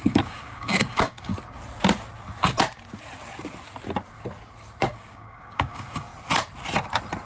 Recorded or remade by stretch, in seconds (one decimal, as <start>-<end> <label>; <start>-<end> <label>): 0.0-1.3 remade; 1.3-4.8 recorded; 4.8-6.1 remade; 6.1-7.3 recorded